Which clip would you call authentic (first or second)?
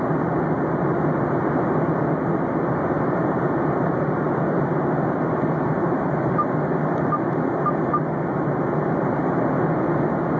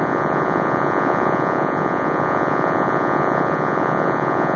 first